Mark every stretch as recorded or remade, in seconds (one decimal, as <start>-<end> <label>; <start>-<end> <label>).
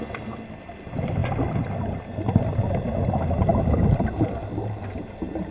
0.0-5.5 recorded